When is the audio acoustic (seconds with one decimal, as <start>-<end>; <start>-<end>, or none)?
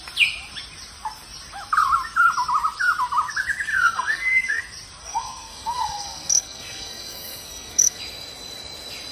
0.0-3.7; 4.6-5.0; 8.0-9.1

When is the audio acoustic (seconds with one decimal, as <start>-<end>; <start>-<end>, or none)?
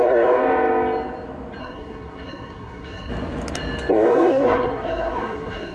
0.4-1.6; 3.1-3.9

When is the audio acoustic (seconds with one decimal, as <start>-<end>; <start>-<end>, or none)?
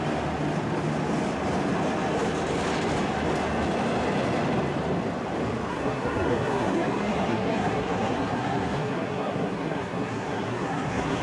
0.0-5.7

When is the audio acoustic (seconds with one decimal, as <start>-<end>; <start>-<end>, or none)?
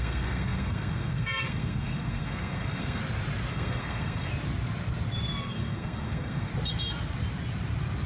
3.0-3.5; 4.3-5.4; 6.5-8.1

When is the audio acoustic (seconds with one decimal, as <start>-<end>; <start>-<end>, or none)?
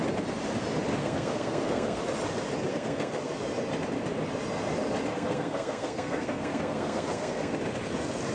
0.0-1.0; 2.0-2.7; 3.3-5.1; 7.6-8.3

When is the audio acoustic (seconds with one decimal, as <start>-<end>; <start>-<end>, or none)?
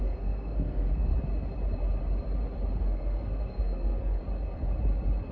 1.1-2.8; 4.2-5.3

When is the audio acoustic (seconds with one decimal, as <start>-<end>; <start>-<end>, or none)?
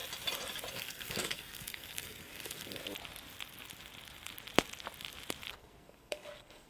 0.0-0.7; 2.8-5.5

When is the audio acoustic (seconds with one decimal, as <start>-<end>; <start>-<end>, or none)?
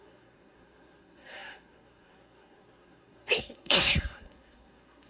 none